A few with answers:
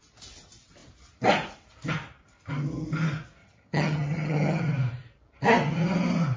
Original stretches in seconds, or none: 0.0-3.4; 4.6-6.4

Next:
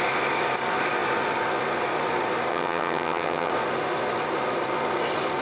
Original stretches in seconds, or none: 0.0-2.5; 3.5-5.4

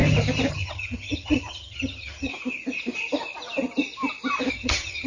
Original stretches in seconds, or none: 0.0-0.5; 2.3-4.5

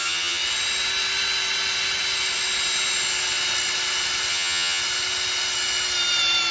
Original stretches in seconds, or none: 0.4-4.3; 4.8-6.5

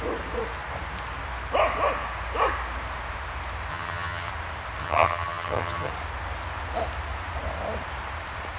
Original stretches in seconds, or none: 0.0-3.7; 4.3-4.8; 5.9-8.6

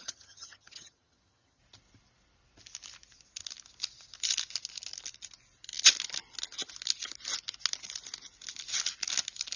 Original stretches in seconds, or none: 1.6-9.6

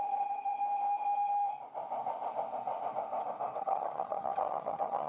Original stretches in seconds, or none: 0.6-3.6